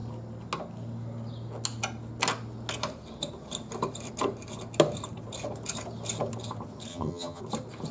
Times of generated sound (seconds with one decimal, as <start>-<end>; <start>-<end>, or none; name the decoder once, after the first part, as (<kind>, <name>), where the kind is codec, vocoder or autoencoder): 6.9-7.4 (vocoder, HiFi-GAN)